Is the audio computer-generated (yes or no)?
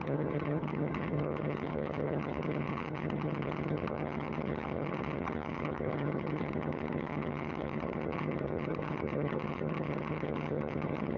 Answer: yes